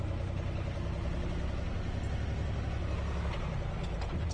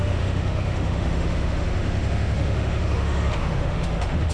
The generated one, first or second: second